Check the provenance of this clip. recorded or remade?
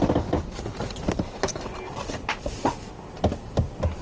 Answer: recorded